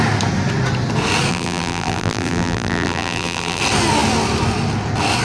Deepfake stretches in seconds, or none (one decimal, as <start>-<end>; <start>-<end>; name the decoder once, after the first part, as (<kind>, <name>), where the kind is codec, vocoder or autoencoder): 1.3-3.6 (vocoder, BigVGAN v2)